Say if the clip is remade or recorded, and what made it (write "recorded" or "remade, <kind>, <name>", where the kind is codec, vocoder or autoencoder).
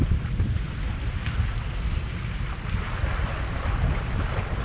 recorded